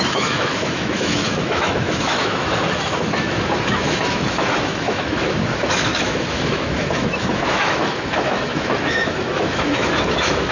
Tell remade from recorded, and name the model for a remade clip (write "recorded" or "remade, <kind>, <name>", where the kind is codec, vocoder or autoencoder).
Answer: remade, autoencoder, DAC-VAE